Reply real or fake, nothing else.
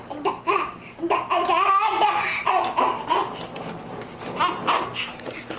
real